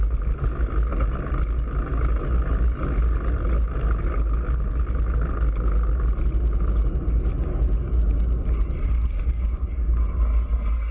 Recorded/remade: recorded